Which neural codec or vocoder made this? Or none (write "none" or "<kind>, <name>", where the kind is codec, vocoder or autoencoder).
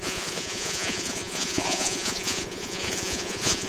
vocoder, Vocos